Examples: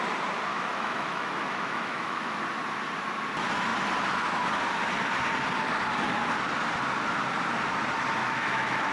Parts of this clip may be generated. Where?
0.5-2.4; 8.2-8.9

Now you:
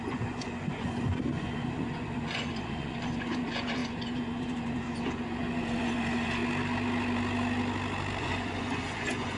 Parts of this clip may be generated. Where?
0.0-6.4; 8.2-9.4

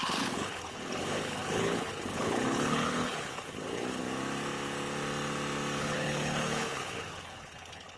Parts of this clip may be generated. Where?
0.0-4.0; 5.8-8.0